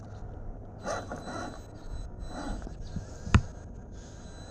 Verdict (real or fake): real